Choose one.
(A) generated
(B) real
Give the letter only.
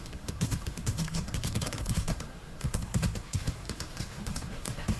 A